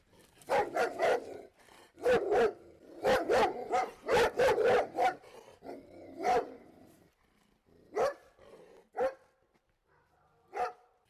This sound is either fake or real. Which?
real